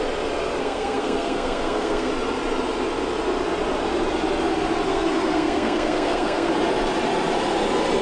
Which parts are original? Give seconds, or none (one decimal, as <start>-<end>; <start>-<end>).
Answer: 0.0-0.6; 2.1-4.9; 6.5-8.0